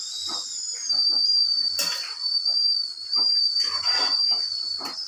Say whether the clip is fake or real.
real